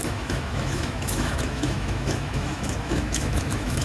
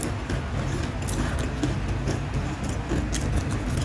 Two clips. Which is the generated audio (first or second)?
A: first